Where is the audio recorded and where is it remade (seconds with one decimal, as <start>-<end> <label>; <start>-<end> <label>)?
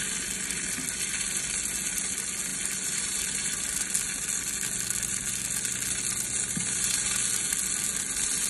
0.0-8.5 recorded